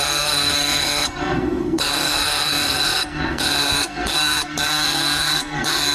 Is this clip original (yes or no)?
no